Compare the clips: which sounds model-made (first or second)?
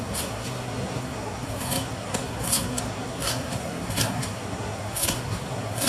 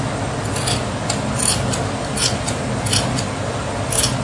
first